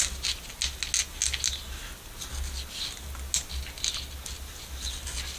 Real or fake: real